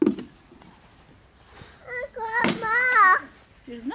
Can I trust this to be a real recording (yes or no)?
yes